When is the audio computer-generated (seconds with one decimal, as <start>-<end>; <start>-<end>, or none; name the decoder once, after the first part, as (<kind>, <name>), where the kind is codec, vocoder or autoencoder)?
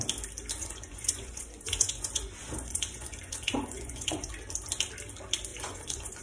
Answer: 0.6-4.3 (vocoder, Vocos); 5.5-6.2